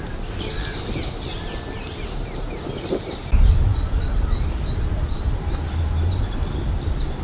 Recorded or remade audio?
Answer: recorded